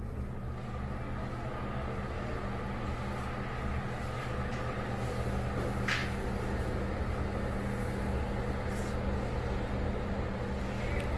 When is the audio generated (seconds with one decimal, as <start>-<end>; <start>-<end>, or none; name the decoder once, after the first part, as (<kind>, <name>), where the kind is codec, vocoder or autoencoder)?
none